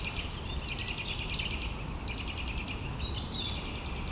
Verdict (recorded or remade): recorded